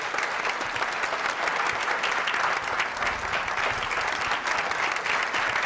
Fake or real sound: real